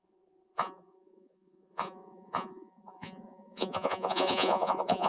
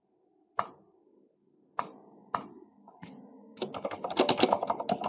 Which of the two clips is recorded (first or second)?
second